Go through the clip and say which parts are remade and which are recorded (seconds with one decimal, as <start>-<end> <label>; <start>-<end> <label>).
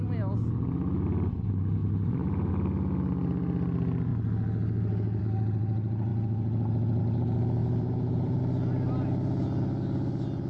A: 0.0-1.8 recorded; 1.8-2.5 remade; 2.5-7.6 recorded; 7.6-8.4 remade; 8.4-10.5 recorded